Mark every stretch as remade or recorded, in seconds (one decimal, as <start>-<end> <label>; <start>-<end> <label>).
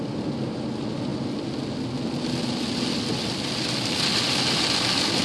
0.0-5.2 recorded